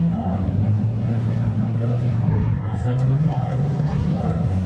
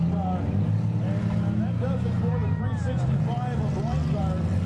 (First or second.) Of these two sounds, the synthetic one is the first